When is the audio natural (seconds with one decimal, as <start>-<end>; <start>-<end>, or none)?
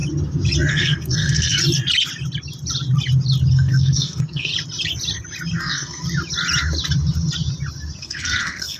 0.0-0.7; 1.6-3.5; 4.5-5.6; 6.0-8.0